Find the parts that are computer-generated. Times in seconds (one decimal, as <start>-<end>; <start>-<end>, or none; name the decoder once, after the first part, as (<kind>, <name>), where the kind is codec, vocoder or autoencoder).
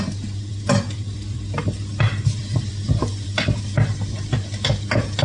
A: 0.5-3.6 (vocoder, BigVGAN v2)